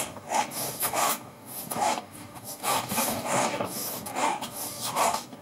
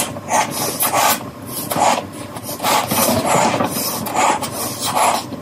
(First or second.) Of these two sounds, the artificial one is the first